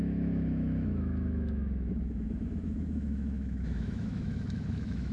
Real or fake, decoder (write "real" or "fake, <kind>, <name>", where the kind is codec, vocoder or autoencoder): fake, autoencoder, DAC-VAE